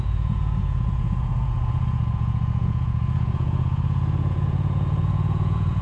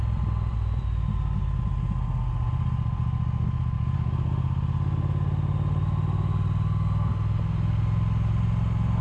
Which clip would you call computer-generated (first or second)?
first